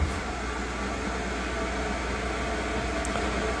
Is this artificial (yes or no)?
no